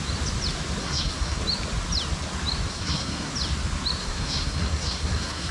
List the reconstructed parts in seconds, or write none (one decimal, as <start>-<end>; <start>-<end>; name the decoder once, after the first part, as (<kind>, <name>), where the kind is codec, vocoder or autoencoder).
0.8-1.4 (codec, SNAC); 2.7-3.3; 4.0-5.5